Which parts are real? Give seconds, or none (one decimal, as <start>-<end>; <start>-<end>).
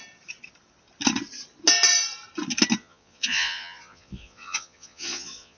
0.0-2.8